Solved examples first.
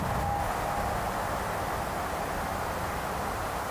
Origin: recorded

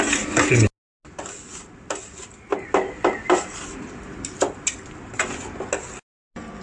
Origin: recorded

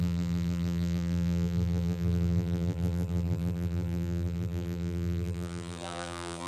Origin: remade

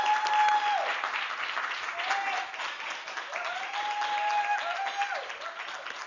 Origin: recorded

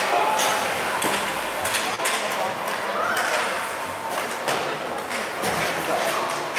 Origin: recorded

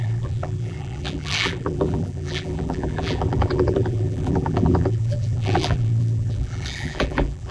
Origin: remade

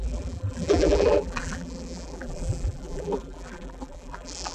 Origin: remade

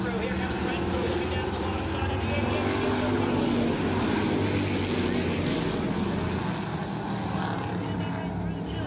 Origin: recorded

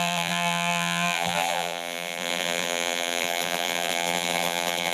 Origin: remade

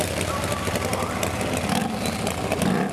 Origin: recorded